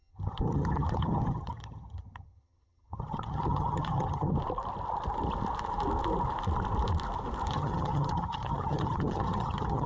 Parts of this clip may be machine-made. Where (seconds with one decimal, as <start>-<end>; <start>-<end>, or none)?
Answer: 0.0-4.3; 7.5-9.9